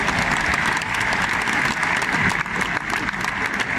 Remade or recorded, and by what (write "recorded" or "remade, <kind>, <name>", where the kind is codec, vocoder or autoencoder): recorded